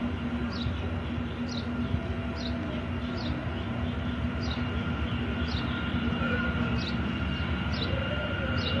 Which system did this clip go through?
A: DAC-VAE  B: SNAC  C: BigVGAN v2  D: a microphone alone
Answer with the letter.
D